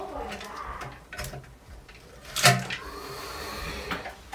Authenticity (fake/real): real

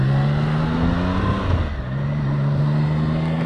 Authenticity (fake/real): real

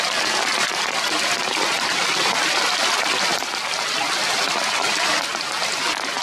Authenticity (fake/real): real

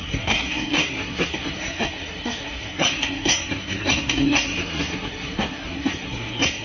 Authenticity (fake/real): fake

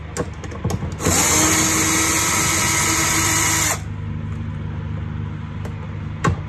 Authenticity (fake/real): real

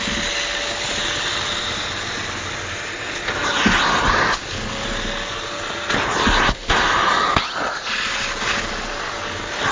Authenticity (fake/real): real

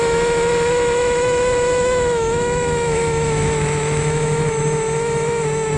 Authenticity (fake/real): fake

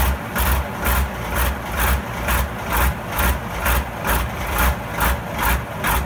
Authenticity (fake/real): real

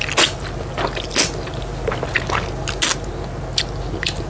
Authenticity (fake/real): real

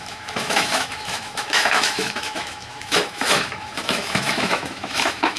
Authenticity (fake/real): fake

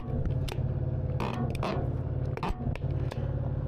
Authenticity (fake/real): real